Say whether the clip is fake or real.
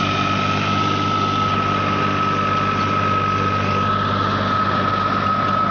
real